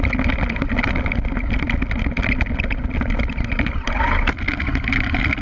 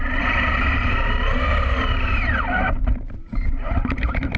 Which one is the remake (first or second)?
second